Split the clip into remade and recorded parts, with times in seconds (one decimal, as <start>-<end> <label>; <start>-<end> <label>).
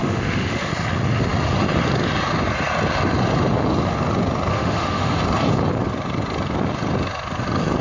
0.0-0.7 remade; 0.7-4.5 recorded; 4.5-5.2 remade; 5.2-7.8 recorded